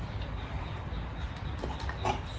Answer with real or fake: real